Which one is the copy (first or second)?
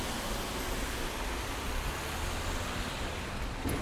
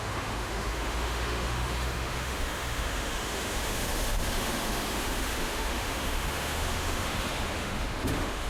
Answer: second